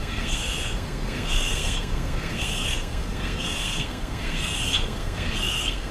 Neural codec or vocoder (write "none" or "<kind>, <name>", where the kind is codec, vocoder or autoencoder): codec, SNAC